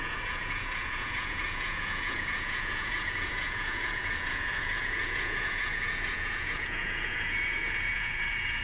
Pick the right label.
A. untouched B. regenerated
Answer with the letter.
B